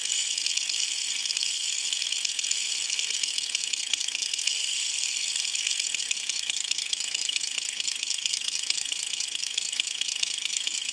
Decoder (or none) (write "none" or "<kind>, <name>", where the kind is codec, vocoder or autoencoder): codec, SNAC